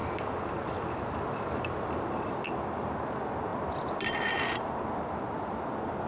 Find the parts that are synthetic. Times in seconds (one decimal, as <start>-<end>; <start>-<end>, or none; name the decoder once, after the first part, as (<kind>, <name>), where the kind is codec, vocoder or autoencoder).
none